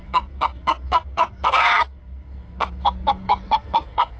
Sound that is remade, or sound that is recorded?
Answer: remade